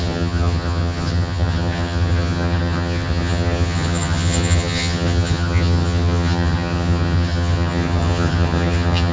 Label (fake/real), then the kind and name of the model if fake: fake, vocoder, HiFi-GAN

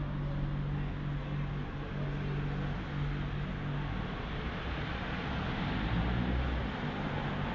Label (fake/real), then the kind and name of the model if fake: real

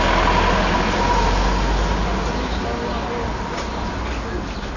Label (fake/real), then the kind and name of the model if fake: real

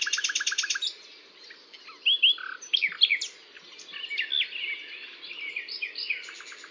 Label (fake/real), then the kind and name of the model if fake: real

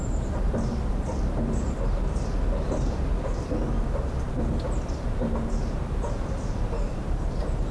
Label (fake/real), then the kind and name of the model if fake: real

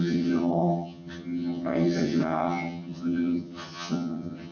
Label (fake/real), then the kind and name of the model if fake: fake, vocoder, HiFi-GAN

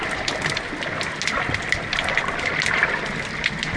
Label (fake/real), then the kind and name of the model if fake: real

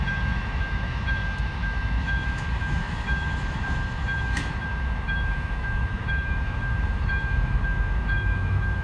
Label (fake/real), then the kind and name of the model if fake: fake, autoencoder, DAC-VAE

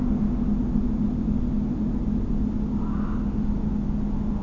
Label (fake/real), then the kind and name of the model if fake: real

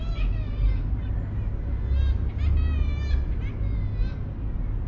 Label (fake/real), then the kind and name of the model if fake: real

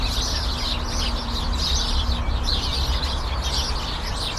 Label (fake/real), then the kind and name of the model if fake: real